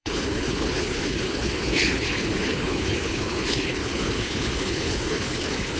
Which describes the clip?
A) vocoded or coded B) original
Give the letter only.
A